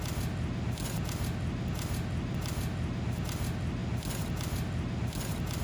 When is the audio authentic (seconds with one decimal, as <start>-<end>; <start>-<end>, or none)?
0.0-5.6